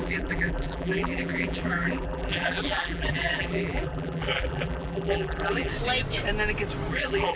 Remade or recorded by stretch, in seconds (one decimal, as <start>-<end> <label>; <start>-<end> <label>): 0.0-5.7 remade; 5.7-6.9 recorded; 6.9-7.4 remade